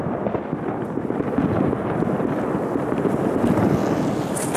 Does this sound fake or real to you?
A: real